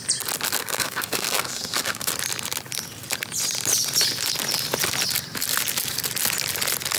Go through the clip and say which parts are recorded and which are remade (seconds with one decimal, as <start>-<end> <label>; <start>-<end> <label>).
0.0-0.6 recorded; 0.6-2.1 remade; 2.1-7.0 recorded